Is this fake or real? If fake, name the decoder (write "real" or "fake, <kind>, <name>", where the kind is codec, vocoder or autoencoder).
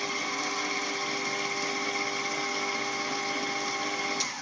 real